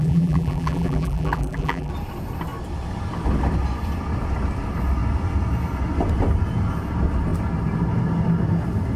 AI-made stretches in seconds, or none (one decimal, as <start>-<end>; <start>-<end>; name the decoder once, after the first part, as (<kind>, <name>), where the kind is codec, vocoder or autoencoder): 0.0-1.9 (vocoder, BigVGAN v2)